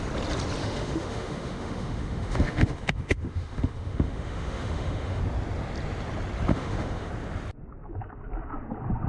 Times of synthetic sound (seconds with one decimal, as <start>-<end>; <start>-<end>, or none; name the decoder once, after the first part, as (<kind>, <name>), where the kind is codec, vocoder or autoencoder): 0.6-5.2 (autoencoder, DAC-VAE); 6.5-7.1